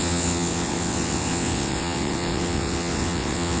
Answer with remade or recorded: remade